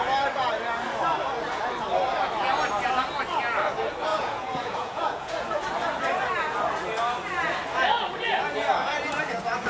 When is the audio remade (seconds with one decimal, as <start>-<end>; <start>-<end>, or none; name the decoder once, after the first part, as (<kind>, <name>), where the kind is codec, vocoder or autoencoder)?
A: 4.1-5.6 (vocoder, Vocos)